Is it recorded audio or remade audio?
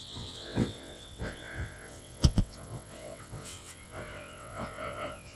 remade